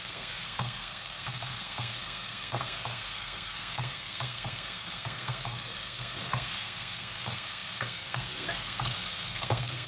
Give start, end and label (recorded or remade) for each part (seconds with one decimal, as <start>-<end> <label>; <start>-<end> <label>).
0.0-9.9 remade